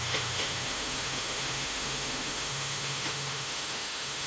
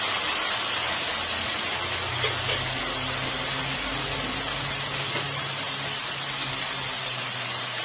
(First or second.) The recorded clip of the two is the second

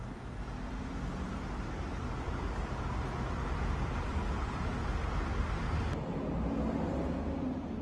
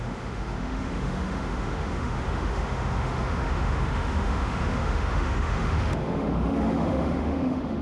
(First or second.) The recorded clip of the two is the first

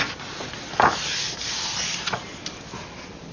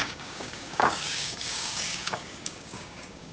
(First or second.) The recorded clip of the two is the first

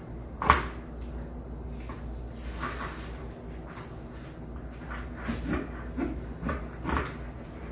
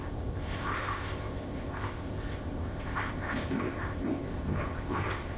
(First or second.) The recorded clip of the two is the first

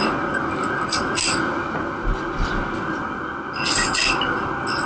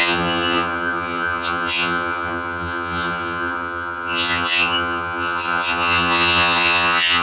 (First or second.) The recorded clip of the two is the first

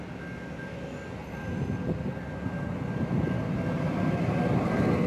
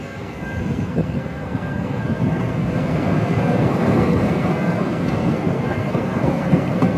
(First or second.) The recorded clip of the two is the first